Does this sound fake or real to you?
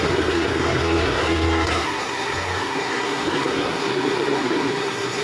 fake